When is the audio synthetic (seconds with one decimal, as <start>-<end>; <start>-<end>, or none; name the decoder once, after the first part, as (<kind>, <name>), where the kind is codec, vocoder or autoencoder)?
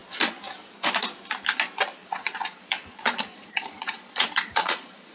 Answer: 2.0-5.1 (vocoder, Vocos)